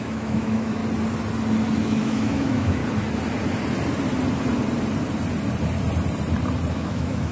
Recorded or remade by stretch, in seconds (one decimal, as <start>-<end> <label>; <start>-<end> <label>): 0.0-0.8 remade; 0.8-1.8 recorded; 1.8-2.8 remade; 2.8-6.7 recorded; 6.7-7.3 remade